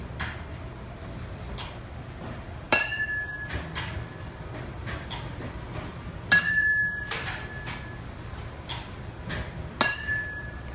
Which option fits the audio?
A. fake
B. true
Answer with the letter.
B